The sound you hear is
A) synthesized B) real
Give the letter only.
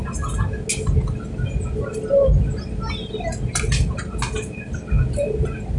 B